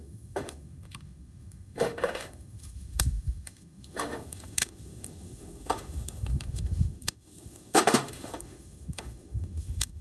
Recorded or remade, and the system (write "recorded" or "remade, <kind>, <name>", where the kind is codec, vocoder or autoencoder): remade, autoencoder, DAC-VAE